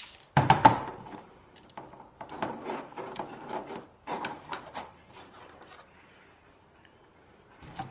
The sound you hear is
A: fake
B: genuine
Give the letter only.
A